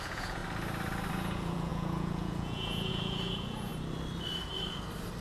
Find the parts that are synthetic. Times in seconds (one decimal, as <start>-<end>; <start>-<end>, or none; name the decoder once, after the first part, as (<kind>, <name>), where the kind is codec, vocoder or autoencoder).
0.0-0.4 (vocoder, Vocos); 1.1-3.7